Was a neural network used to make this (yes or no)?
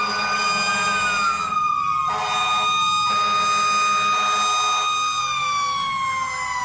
no